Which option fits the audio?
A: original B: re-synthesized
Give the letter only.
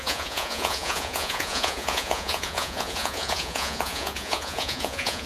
B